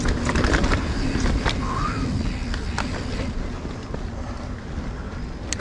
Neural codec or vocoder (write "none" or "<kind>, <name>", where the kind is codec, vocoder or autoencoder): none